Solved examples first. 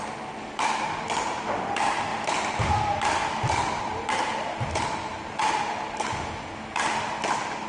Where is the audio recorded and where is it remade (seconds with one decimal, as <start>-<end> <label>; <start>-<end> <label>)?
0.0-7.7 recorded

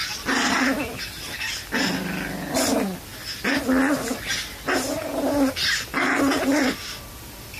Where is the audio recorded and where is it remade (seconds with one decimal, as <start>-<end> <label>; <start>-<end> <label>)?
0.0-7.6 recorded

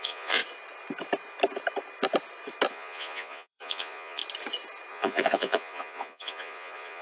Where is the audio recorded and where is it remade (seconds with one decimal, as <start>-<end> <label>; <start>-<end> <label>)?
0.0-0.4 remade; 0.4-2.7 recorded; 2.7-4.2 remade; 4.2-4.9 recorded; 4.9-7.0 remade

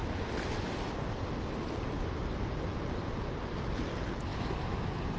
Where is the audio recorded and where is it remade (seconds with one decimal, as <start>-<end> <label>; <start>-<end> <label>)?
0.0-5.2 recorded

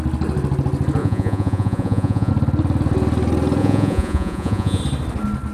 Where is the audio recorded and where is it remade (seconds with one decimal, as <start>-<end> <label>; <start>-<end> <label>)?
0.0-1.0 recorded; 1.0-2.3 remade; 2.3-3.6 recorded; 3.6-4.8 remade; 4.8-5.5 recorded

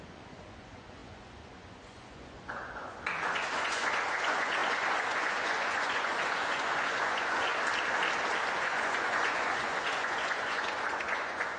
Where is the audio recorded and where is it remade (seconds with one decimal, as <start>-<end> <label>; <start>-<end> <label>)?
0.0-7.5 remade; 7.5-8.5 recorded; 8.5-11.6 remade

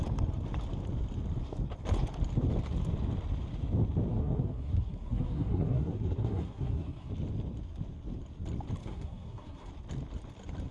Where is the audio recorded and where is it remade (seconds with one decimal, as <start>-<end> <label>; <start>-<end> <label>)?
0.0-4.1 recorded; 4.1-7.1 remade; 7.1-8.8 recorded; 8.8-9.7 remade; 9.7-10.7 recorded

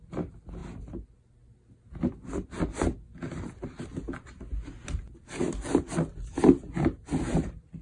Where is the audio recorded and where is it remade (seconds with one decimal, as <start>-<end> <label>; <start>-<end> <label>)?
0.0-7.8 recorded